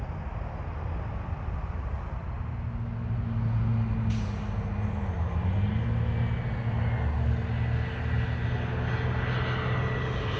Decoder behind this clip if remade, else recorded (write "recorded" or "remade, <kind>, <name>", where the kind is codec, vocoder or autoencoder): recorded